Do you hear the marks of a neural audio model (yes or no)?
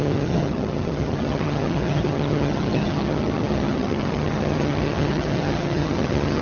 yes